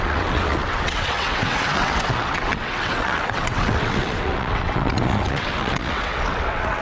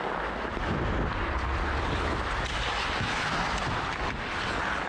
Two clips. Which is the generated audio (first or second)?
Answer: first